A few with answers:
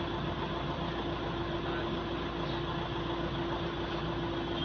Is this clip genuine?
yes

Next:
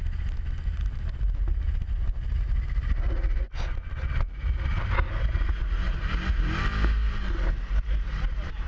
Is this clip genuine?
yes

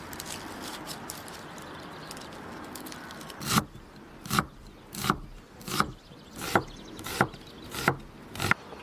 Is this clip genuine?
yes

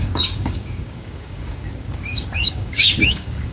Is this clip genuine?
no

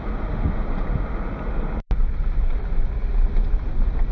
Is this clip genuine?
yes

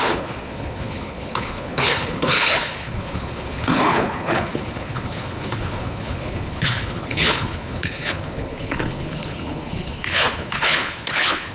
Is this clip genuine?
no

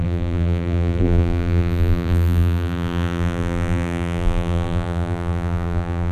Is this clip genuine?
no